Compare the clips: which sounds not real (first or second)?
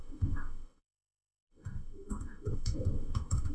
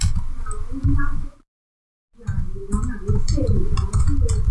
first